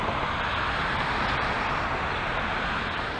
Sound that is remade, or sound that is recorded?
recorded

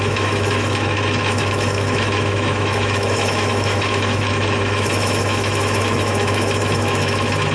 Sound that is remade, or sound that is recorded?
remade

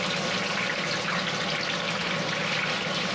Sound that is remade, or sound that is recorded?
recorded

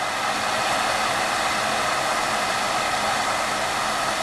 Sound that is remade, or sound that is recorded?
recorded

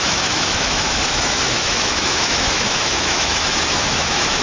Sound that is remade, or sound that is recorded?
remade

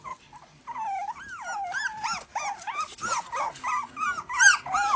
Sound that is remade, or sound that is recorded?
recorded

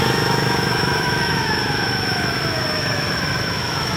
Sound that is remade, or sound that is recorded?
remade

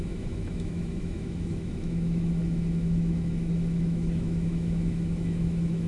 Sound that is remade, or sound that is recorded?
remade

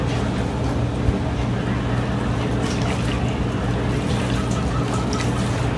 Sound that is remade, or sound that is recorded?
recorded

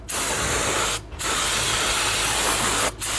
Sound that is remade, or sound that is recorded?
recorded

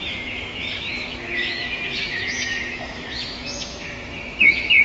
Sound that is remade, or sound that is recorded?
remade